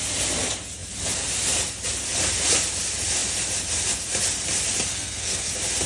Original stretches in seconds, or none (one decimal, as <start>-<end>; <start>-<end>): 0.0-4.9; 5.5-5.9